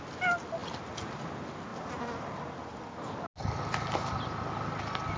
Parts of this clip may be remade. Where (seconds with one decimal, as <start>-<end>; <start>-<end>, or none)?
none

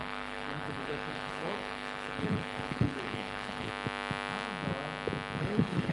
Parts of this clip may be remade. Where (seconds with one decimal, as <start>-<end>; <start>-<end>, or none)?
0.0-3.7; 5.4-5.9

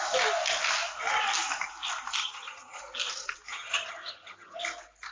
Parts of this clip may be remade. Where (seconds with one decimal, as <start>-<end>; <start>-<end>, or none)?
2.2-2.8; 3.5-4.6

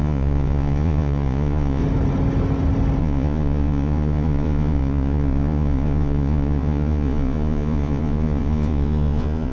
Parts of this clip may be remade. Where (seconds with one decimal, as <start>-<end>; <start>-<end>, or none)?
0.0-1.8; 3.0-9.5

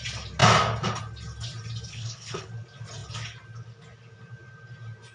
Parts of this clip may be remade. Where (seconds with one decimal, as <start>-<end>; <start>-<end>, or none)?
1.9-2.5

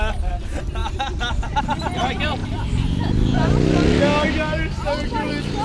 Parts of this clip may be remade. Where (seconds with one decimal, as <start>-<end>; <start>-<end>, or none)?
none

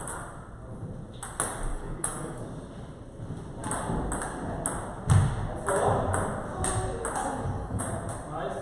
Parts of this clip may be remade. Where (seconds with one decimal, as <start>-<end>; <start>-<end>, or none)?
1.7-2.4; 7.2-7.8

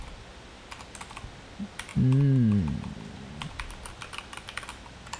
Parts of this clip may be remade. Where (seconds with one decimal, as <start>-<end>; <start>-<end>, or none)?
none